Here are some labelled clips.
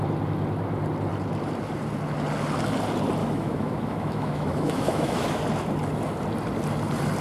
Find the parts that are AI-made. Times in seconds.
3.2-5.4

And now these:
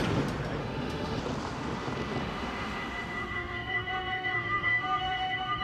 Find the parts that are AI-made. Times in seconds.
0.6-1.2; 2.2-5.6

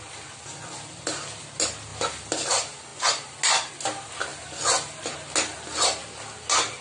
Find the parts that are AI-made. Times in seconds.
none

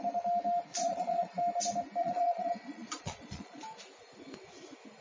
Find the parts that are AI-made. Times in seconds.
0.7-1.4; 2.0-3.6

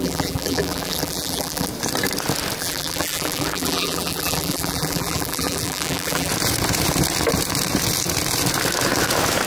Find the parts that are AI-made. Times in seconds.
0.0-1.7; 2.6-6.3

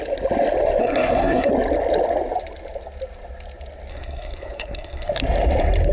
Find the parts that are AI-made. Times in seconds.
0.8-1.5; 3.9-5.1

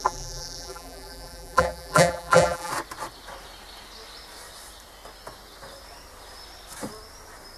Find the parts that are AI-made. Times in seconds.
0.0-2.7

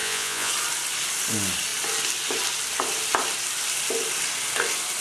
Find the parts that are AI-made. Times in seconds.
0.0-0.5